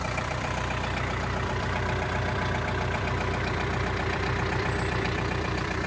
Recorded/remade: remade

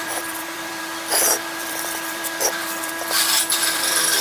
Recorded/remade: remade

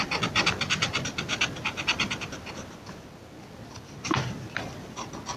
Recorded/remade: recorded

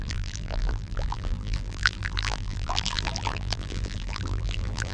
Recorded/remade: remade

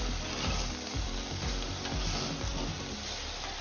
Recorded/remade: remade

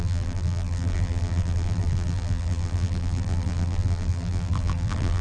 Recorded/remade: remade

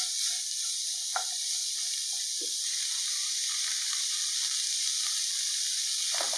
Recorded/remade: recorded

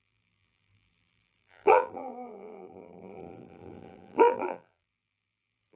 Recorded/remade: remade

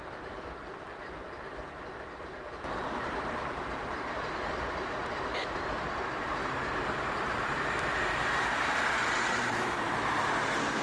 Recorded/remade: remade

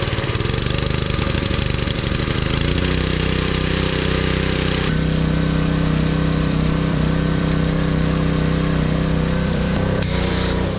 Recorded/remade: remade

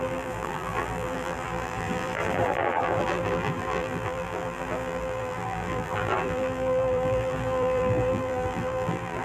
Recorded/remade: remade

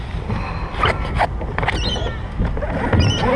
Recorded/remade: recorded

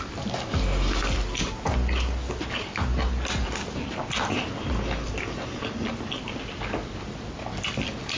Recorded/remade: recorded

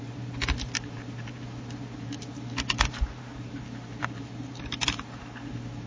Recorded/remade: remade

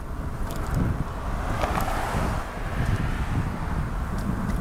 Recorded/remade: recorded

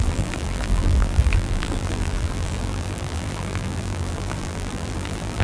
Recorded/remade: remade